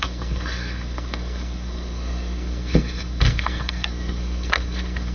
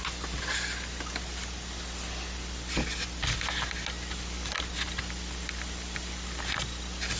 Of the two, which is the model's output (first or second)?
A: first